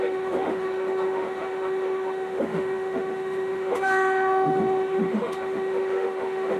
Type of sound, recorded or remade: remade